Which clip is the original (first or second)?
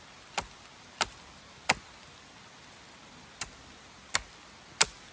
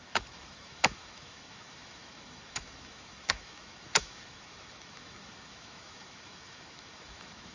first